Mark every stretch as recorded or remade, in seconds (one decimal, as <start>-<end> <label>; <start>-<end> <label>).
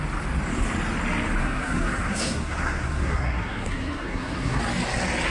0.0-1.4 recorded; 1.4-4.6 remade; 4.6-5.3 recorded